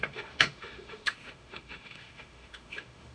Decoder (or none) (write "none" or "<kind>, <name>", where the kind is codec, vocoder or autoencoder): autoencoder, DAC-VAE